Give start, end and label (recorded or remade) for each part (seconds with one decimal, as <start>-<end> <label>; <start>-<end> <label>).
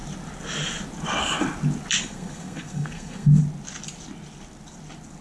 0.0-2.0 recorded; 2.0-3.4 remade; 3.4-5.2 recorded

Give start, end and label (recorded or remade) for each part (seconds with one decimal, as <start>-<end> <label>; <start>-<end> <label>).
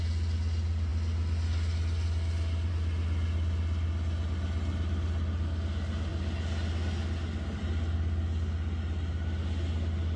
0.0-10.2 recorded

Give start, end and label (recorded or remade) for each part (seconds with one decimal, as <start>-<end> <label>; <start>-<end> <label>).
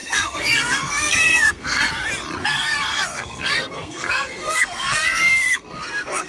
0.0-1.9 remade; 1.9-2.4 recorded; 2.4-6.3 remade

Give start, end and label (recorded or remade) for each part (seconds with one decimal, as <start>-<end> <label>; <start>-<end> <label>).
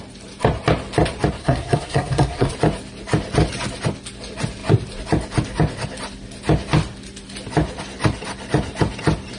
0.0-1.4 recorded; 1.4-2.5 remade; 2.5-9.4 recorded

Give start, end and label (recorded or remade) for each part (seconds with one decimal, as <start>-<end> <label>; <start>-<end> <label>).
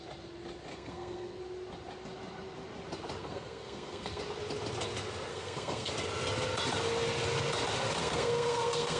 0.0-0.7 recorded; 0.7-1.4 remade; 1.4-3.2 recorded; 3.2-4.2 remade; 4.2-5.3 recorded; 5.3-5.9 remade; 5.9-8.0 recorded; 8.0-9.0 remade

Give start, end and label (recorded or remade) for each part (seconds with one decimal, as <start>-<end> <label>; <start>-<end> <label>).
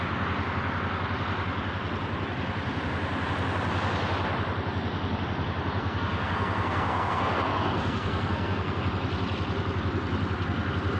0.0-5.8 recorded; 5.8-8.8 remade; 8.8-11.0 recorded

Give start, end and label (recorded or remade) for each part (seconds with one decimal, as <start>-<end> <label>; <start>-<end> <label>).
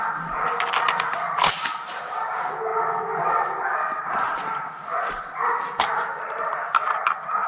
0.0-7.5 recorded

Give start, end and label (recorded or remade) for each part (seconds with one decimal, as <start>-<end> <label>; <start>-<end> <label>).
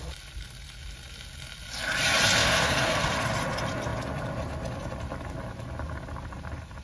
0.0-2.4 recorded; 2.4-3.1 remade; 3.1-6.8 recorded